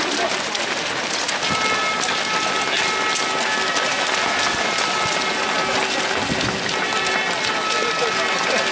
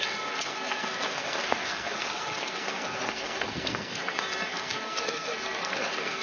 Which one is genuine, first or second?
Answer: first